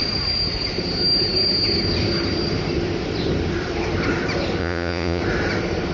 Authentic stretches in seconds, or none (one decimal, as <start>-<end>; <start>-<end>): 0.0-4.6; 5.2-5.9

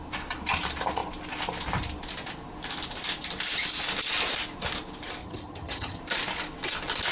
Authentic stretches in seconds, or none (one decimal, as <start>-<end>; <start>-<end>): 0.0-5.2; 6.0-7.1

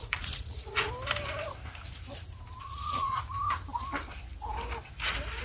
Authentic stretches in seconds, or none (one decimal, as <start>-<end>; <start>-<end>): 0.9-2.6; 3.2-5.4

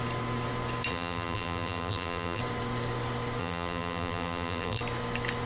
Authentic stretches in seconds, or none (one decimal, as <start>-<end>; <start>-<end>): 0.0-0.9; 2.4-3.4; 4.8-5.5

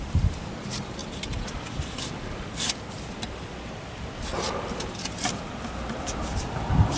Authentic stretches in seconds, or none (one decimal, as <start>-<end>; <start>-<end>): 1.0-4.7